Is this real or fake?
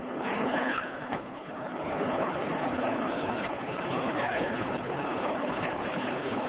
fake